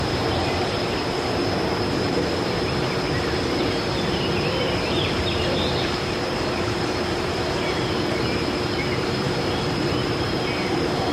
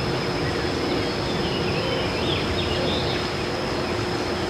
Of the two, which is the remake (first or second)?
first